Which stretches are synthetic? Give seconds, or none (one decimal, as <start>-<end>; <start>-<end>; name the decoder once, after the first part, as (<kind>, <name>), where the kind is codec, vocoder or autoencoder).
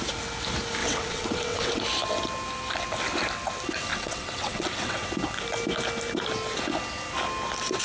0.8-1.8 (vocoder, WaveNeXt); 3.9-5.1